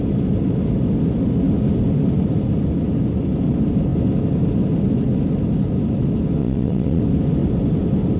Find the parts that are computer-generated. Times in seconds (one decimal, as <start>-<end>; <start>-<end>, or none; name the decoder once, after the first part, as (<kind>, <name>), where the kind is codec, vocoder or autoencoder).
6.4-7.0 (vocoder, Vocos)